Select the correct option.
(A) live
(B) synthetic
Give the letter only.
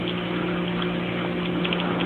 A